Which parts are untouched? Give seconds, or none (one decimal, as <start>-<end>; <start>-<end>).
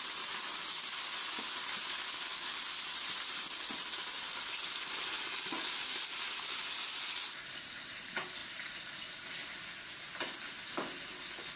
0.0-11.6